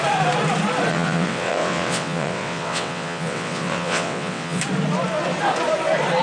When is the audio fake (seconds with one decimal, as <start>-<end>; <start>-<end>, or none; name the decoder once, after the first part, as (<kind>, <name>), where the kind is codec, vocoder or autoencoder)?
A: 0.9-4.6 (vocoder, WaveNeXt)